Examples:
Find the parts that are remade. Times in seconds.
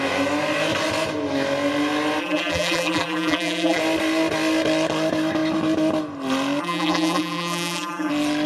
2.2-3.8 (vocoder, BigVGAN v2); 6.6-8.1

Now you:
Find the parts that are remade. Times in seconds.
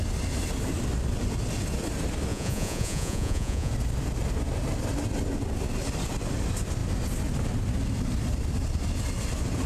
2.3-3.7 (vocoder, Vocos)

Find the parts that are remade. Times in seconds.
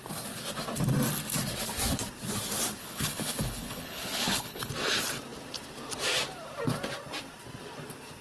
2.8-4.7 (codec, HILCodec)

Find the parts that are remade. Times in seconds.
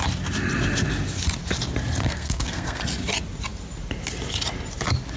2.0-2.8 (codec, SNAC)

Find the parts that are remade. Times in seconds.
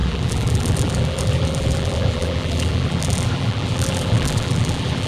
0.0-5.1 (vocoder, BigVGAN v2)